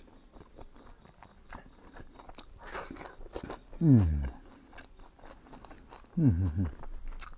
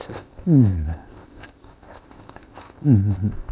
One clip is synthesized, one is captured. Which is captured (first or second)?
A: first